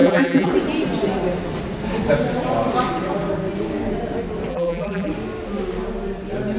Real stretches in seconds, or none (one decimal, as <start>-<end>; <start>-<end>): 0.5-4.5; 5.1-6.6